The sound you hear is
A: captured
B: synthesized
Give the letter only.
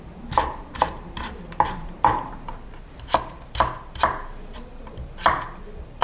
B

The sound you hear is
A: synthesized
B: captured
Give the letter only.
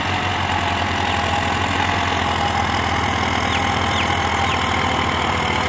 B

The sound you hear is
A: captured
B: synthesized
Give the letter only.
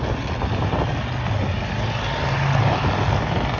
A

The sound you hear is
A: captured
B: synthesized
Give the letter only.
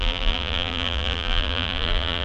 B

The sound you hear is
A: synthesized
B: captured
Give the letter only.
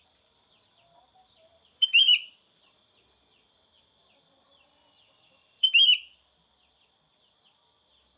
A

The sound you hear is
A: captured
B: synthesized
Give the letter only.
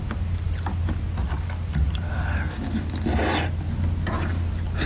A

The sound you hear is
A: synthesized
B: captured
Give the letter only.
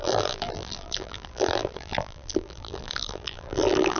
A